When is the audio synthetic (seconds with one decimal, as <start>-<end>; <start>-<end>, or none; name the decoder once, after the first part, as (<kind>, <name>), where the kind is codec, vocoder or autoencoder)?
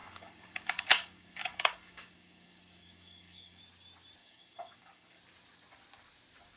0.0-3.6 (codec, DAC); 4.2-5.2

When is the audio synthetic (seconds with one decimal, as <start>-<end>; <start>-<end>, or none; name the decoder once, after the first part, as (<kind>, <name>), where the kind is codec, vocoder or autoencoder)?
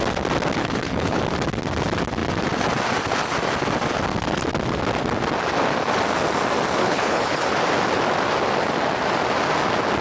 0.6-1.2 (codec, HILCodec); 6.8-7.6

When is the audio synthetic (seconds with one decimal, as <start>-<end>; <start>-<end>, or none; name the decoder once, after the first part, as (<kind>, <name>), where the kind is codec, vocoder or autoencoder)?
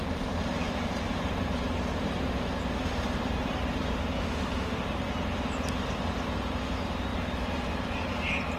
4.2-4.8 (autoencoder, DAC-VAE)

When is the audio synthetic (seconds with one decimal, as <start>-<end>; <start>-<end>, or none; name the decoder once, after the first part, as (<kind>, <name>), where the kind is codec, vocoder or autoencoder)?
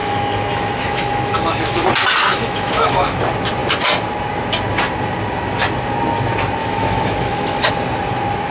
0.0-1.8 (autoencoder, DAC-VAE); 2.2-3.2; 6.6-7.7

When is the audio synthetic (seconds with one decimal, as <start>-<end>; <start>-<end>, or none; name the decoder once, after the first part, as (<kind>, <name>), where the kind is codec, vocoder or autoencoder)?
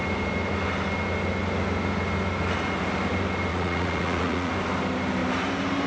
3.5-4.5 (vocoder, Vocos)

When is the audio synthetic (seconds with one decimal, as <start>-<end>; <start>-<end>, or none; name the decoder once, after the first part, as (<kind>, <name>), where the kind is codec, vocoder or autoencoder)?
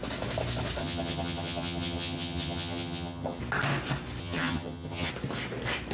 0.8-3.4 (vocoder, HiFi-GAN); 4.2-5.1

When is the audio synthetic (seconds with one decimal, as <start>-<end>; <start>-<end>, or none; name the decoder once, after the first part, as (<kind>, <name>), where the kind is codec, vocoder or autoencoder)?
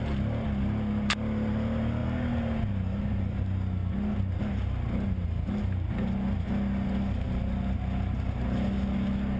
none